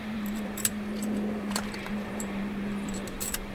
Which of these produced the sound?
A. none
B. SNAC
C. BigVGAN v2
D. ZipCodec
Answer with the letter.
C